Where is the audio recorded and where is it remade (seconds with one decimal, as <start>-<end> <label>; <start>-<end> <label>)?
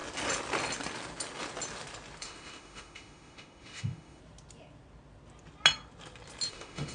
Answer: 0.0-2.2 recorded; 2.2-4.2 remade; 4.2-6.5 recorded; 6.5-6.9 remade